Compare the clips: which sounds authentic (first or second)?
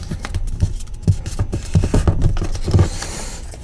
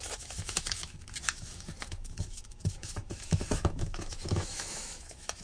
first